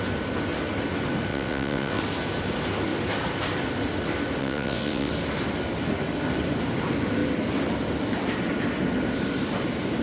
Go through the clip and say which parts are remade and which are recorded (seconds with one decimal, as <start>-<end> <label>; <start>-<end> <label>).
0.0-1.3 recorded; 1.3-2.0 remade; 2.0-4.4 recorded; 4.4-5.1 remade; 5.1-10.0 recorded